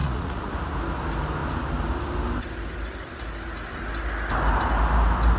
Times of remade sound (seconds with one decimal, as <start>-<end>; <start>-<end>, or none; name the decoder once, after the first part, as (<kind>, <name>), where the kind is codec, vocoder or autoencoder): 0.0-0.5 (vocoder, Vocos)